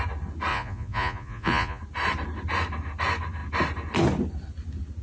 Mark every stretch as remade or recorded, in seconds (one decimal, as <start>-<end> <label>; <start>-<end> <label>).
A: 0.0-0.5 recorded; 0.5-1.8 remade; 1.8-5.0 recorded

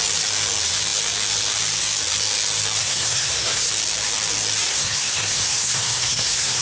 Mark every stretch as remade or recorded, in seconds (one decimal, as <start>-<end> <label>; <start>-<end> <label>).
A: 0.0-2.8 recorded; 2.8-3.7 remade; 3.7-4.7 recorded; 4.7-6.6 remade

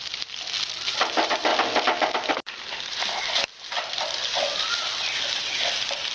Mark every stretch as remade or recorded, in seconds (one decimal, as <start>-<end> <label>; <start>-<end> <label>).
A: 0.0-6.1 recorded

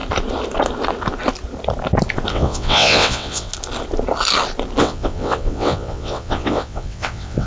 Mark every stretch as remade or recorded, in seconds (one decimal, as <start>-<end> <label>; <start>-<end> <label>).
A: 0.0-2.3 recorded; 2.3-3.5 remade; 3.5-4.8 recorded; 4.8-7.5 remade